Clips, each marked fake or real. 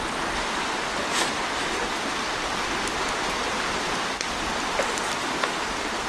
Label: real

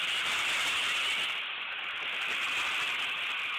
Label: real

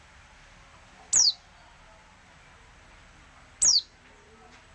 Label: real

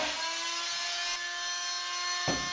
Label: real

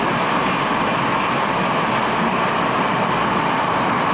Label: real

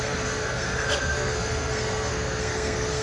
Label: fake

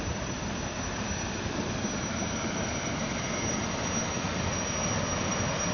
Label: real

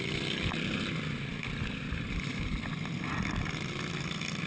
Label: real